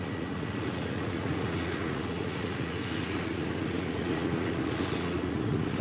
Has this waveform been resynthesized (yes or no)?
yes